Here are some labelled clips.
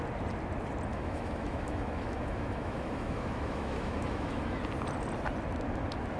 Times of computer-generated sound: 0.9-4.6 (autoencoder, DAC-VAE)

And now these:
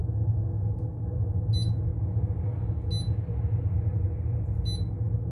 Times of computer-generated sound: 0.0-0.7 (autoencoder, DAC-VAE)

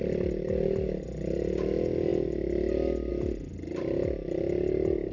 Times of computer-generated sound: none

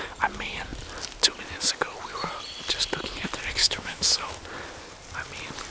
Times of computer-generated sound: 3.6-4.4 (autoencoder, DAC-VAE)

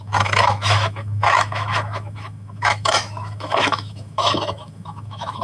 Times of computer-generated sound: 0.0-5.4 (autoencoder, DAC-VAE)

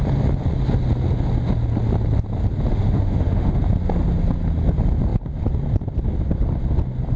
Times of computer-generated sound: 2.7-3.6 (autoencoder, DAC-VAE)

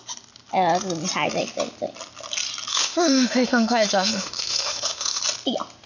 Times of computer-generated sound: 2.7-5.2 (autoencoder, DAC-VAE)

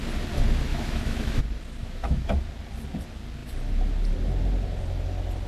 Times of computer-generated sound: 0.7-1.4 (autoencoder, DAC-VAE); 1.8-2.3